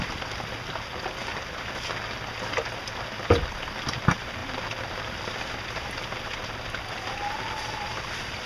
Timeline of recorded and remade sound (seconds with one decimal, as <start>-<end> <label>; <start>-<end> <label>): 0.0-8.5 recorded